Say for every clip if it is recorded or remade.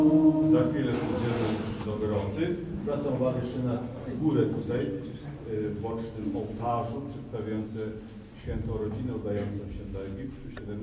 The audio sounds recorded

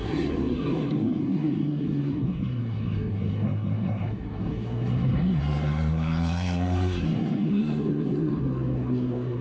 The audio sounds remade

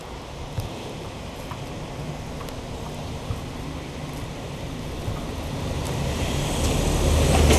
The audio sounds recorded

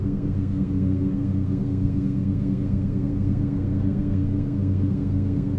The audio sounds remade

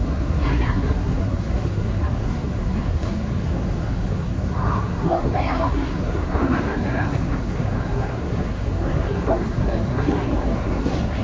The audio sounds remade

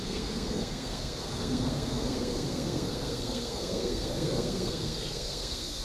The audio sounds remade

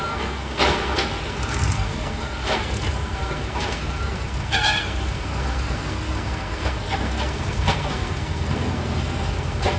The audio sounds remade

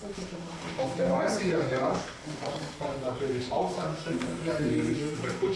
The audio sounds remade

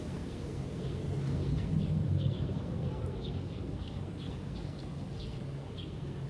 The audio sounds remade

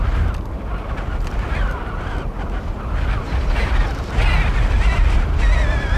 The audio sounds recorded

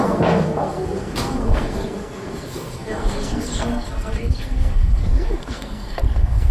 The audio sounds remade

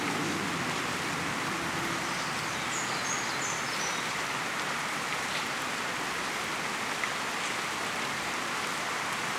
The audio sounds recorded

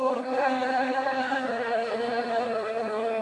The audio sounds remade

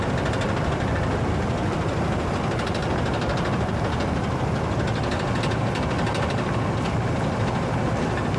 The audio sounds recorded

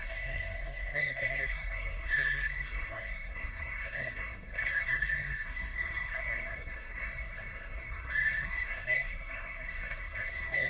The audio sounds remade